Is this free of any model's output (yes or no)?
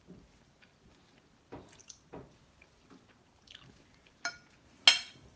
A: yes